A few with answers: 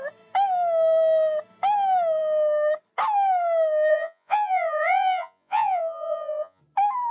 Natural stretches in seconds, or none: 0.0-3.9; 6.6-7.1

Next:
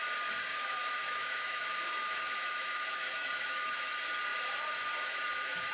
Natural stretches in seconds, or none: 0.0-0.5; 3.9-5.7

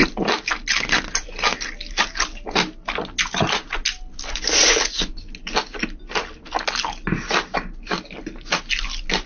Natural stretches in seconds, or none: 0.0-9.3

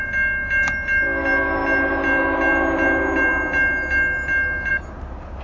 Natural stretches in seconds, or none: 0.0-5.4